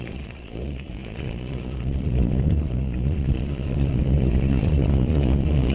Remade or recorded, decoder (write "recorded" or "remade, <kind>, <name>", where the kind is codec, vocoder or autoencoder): remade, vocoder, Vocos